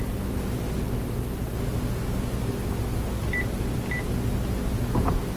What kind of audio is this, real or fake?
real